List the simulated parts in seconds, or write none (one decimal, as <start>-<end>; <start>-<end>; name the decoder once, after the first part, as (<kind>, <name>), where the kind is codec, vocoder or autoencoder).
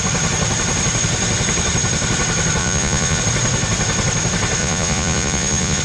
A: 2.6-3.2 (vocoder, Vocos); 4.6-5.8